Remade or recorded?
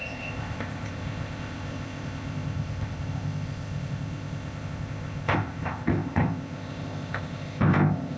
remade